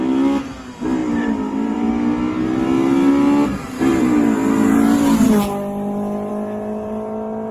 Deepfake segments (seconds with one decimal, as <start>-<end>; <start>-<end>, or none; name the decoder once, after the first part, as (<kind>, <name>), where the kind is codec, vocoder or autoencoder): 1.0-1.9 (vocoder, BigVGAN v2); 3.9-5.3